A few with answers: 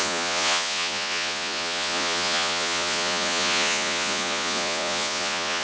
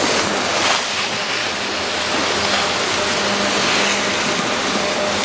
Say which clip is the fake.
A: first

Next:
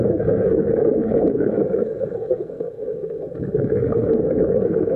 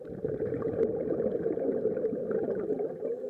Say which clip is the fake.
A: first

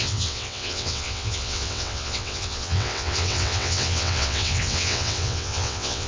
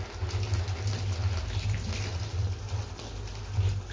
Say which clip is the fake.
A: first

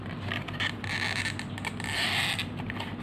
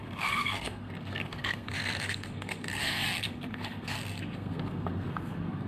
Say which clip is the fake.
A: second